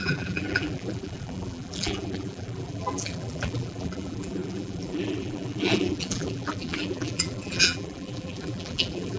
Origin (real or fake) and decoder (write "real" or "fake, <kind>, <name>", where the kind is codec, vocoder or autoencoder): fake, vocoder, BigVGAN v2